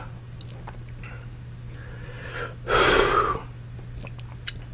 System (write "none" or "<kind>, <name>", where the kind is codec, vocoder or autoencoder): none